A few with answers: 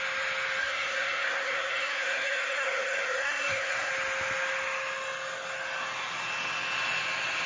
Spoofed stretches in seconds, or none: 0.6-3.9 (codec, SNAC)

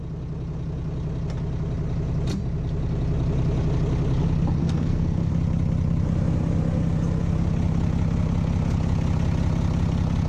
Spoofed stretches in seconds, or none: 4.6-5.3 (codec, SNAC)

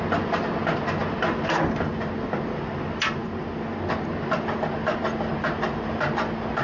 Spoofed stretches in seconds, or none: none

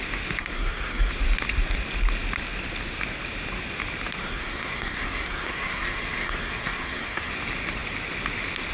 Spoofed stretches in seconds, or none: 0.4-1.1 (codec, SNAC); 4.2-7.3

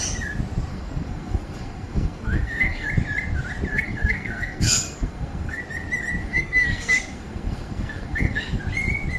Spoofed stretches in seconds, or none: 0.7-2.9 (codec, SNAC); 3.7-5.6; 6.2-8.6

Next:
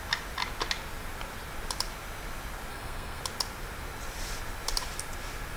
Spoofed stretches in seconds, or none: 2.7-3.2 (codec, SNAC)

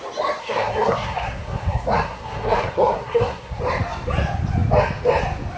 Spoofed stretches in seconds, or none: 0.4-3.6 (codec, SNAC)